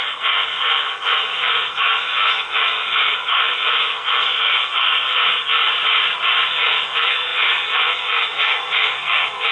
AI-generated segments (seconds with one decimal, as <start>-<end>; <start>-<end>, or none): 0.0-5.6; 6.5-9.5